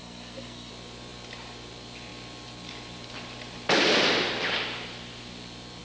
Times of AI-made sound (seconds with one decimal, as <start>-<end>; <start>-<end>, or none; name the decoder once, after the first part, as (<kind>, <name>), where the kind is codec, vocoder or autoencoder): 0.0-0.7 (codec, SNAC)